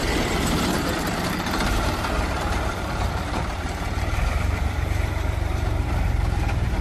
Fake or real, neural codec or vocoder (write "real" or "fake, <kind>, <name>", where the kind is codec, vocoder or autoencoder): fake, vocoder, BigVGAN v2